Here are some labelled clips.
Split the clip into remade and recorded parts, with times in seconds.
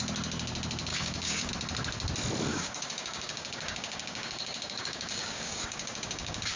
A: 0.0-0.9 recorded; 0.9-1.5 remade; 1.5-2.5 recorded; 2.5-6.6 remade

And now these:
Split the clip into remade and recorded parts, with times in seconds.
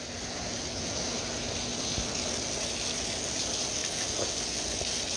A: 0.0-5.2 recorded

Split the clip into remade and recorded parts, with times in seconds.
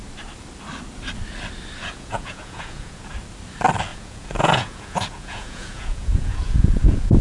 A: 0.0-1.8 recorded; 1.8-3.1 remade; 3.1-3.9 recorded; 3.9-7.2 remade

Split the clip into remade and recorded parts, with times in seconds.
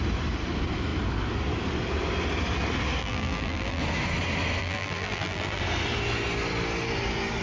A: 0.0-3.0 recorded; 3.0-3.8 remade; 3.8-4.6 recorded; 4.6-5.6 remade; 5.6-7.4 recorded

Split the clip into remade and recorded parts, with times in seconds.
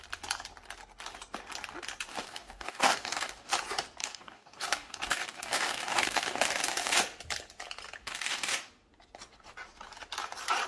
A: 0.0-2.1 recorded; 2.1-3.5 remade; 3.5-4.0 recorded; 4.0-7.0 remade; 7.0-8.0 recorded; 8.0-8.7 remade; 8.7-10.7 recorded